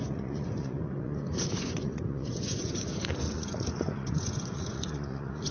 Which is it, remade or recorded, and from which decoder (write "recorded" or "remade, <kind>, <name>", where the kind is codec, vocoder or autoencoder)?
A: remade, vocoder, Vocos